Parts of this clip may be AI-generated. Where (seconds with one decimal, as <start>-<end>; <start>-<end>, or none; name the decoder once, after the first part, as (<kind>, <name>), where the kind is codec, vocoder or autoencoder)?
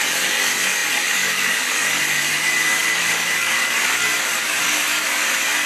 0.0-5.7 (codec, DAC)